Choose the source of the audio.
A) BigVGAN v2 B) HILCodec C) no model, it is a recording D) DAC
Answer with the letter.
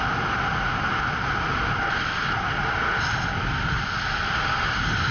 C